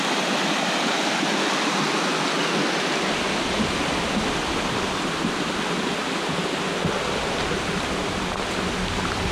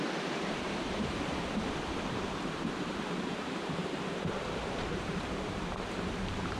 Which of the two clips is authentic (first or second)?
first